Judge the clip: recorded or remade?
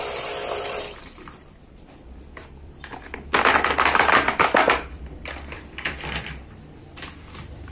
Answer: remade